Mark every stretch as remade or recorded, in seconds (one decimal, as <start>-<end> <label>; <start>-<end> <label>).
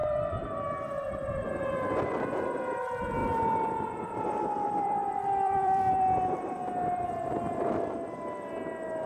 0.0-1.3 remade; 1.3-3.2 recorded; 3.2-7.1 remade; 7.1-9.1 recorded